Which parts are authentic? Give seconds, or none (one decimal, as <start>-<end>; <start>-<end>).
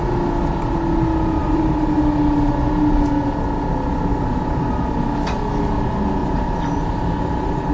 0.0-1.4; 2.0-4.1; 4.7-6.2